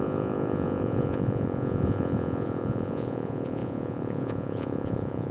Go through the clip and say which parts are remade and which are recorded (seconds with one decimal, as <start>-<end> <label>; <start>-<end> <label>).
0.0-5.3 remade